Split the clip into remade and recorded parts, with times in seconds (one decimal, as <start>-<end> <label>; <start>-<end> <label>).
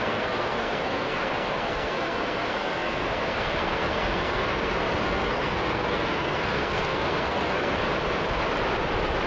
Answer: 0.0-7.9 remade; 7.9-9.3 recorded